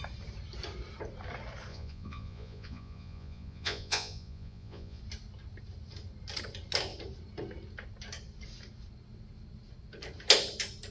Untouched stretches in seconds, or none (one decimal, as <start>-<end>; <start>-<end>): 0.0-1.7; 5.0-10.9